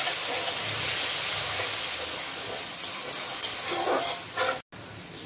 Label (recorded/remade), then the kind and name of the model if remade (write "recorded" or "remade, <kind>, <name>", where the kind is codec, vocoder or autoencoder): recorded